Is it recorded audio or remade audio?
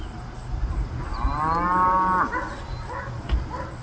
recorded